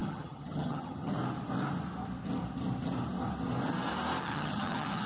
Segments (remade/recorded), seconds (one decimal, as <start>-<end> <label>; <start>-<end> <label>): 0.0-1.1 remade; 1.1-4.2 recorded; 4.2-5.1 remade

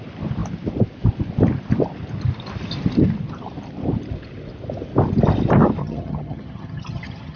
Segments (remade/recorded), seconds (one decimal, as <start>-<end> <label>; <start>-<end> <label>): 0.0-5.8 recorded; 5.8-7.4 remade

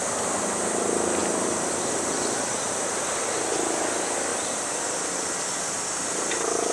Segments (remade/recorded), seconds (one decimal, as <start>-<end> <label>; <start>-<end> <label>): 0.0-6.7 recorded